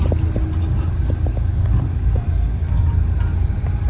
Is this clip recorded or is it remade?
recorded